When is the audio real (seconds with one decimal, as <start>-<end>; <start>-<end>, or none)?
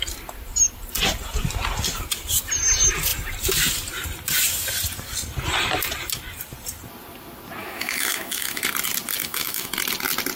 0.0-7.6; 8.6-9.2; 9.7-10.4